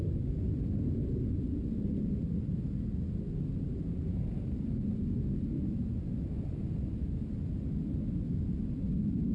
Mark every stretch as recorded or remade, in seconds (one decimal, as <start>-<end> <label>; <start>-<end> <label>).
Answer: 0.0-9.3 recorded